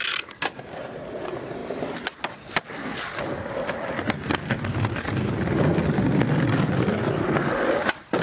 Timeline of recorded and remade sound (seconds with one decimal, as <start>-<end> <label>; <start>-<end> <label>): 0.0-8.2 recorded

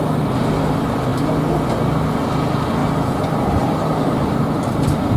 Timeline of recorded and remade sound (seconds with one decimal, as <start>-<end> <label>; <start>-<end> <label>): 0.0-2.8 recorded; 2.8-4.4 remade; 4.4-5.2 recorded

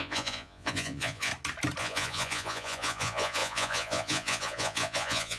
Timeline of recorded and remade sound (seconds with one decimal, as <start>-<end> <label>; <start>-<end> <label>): 0.0-1.3 remade; 1.3-1.8 recorded; 1.8-5.4 remade

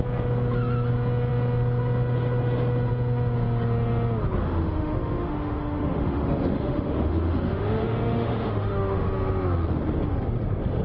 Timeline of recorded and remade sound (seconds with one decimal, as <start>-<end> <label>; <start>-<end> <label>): 0.0-4.4 recorded; 4.4-9.1 remade; 9.1-10.8 recorded